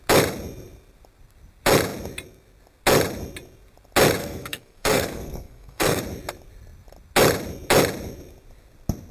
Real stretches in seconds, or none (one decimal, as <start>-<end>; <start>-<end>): 0.0-4.2; 6.0-9.1